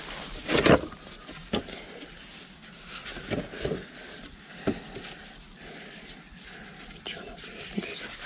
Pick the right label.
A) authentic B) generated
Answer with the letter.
A